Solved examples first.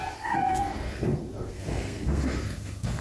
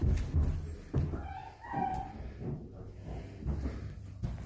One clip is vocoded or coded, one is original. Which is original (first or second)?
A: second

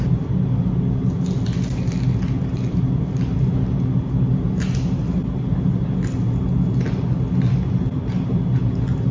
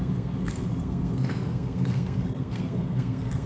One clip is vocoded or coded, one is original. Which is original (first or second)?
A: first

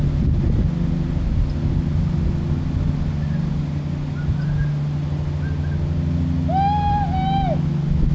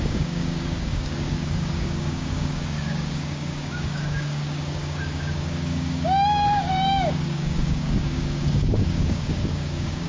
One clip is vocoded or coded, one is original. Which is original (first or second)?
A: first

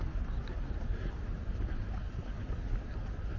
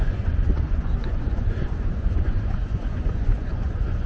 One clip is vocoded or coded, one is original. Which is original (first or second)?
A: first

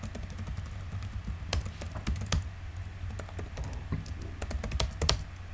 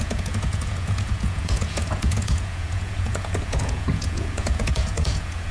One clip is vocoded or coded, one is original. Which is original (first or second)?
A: first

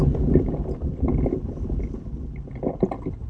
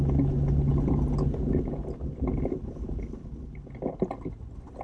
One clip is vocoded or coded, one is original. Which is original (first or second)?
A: second